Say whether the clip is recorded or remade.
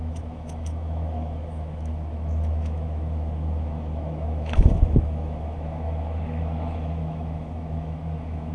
remade